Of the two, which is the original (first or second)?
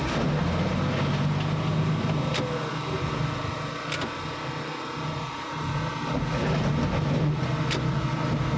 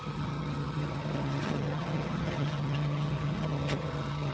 first